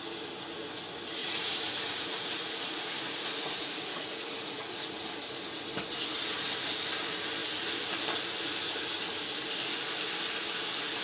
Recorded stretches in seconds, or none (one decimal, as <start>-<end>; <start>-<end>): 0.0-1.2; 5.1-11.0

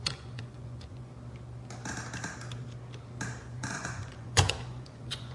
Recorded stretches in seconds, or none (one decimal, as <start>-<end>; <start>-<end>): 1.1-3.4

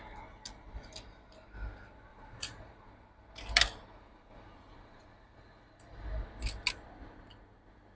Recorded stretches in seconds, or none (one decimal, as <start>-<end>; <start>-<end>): 0.0-2.1; 2.9-3.9; 5.7-8.0

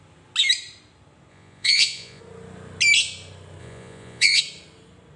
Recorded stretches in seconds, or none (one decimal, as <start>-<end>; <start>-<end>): 0.0-1.3; 2.2-3.6; 4.4-5.2